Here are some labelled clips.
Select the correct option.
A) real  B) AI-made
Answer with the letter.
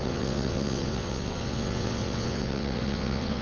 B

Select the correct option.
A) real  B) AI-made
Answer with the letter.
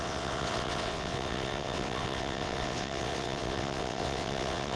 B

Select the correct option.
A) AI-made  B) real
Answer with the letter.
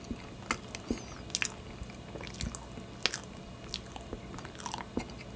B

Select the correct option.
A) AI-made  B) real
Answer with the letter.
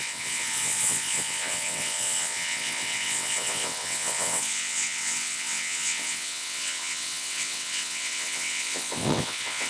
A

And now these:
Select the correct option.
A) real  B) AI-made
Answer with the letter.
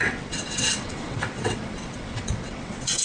B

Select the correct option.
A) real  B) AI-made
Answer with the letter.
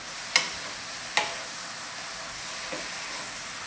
A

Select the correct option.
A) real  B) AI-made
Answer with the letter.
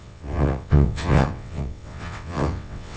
B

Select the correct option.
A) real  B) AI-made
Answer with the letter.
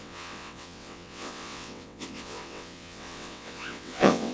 B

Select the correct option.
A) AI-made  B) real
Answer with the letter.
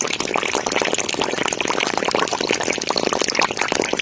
B